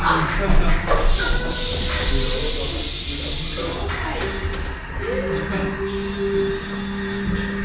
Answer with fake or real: real